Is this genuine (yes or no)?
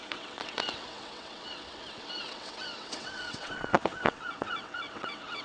no